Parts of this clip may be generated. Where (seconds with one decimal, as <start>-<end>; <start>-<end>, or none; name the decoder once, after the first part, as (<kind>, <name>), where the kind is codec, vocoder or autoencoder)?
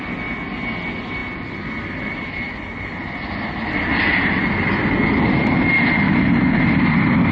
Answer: 2.7-4.4 (vocoder, BigVGAN v2)